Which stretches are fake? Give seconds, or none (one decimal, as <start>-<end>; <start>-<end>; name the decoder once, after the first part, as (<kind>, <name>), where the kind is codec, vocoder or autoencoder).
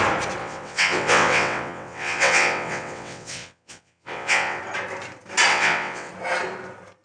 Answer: 0.4-4.6 (vocoder, WaveNeXt); 5.5-6.1